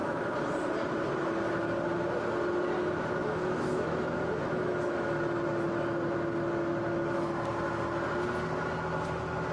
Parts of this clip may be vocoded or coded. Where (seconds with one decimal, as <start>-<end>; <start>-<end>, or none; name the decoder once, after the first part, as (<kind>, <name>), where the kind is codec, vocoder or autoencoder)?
3.2-4.9 (autoencoder, DAC-VAE)